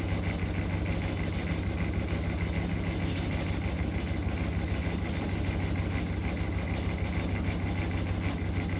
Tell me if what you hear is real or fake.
real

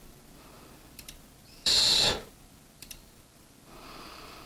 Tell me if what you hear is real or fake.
fake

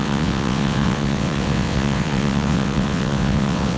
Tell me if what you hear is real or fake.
fake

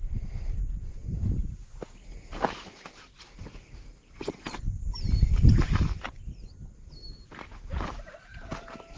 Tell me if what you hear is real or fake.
real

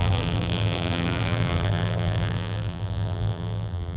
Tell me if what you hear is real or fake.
fake